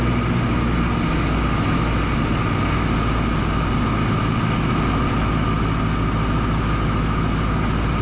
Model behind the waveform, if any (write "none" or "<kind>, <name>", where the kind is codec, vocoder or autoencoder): none